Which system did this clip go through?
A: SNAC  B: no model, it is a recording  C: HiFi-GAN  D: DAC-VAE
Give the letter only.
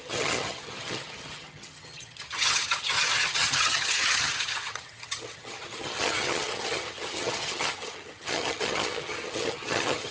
C